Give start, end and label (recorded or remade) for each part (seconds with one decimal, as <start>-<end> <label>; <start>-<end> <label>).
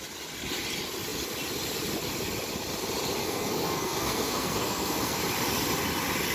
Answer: 0.0-3.2 recorded; 3.2-5.2 remade; 5.2-6.3 recorded